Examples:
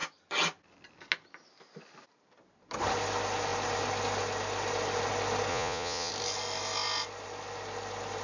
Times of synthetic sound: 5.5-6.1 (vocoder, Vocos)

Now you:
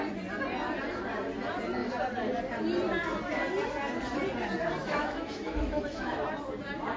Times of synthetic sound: 4.8-6.2 (autoencoder, DAC-VAE)

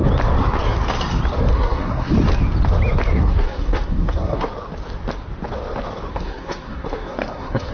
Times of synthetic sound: 1.5-2.1 (codec, SNAC); 3.1-4.5; 6.1-7.7

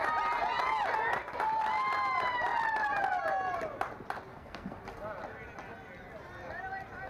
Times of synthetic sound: 4.3-4.8 (codec, SNAC)

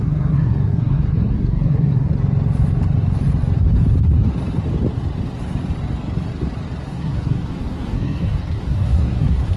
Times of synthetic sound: 0.0-2.1 (codec, SNAC); 6.9-9.6

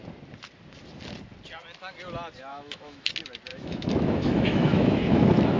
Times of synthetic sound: 2.5-3.1 (autoencoder, DAC-VAE); 3.5-5.6

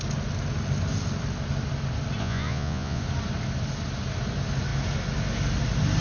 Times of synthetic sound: 2.2-3.0 (vocoder, Vocos)